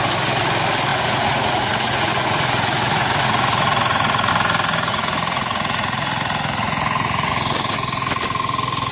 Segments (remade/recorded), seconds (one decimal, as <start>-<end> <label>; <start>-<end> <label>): 0.0-0.9 recorded; 0.9-4.3 remade; 4.3-4.9 recorded; 4.9-7.3 remade; 7.3-8.9 recorded